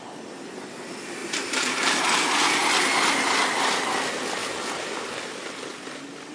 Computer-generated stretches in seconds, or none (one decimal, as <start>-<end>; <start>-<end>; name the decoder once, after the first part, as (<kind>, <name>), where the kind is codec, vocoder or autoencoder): 1.2-2.0 (vocoder, BigVGAN v2)